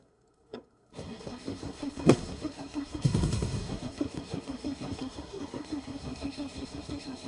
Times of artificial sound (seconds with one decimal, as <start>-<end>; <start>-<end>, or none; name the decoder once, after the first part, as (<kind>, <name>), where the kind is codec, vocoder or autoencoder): 0.0-7.3 (codec, SNAC)